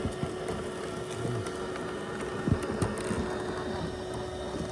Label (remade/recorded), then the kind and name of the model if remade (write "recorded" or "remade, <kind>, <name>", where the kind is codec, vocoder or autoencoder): recorded